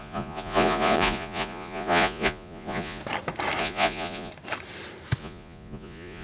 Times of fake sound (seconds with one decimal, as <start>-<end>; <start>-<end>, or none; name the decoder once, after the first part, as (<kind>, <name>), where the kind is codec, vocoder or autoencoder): 0.0-3.0 (vocoder, Vocos); 3.6-4.3; 5.2-6.2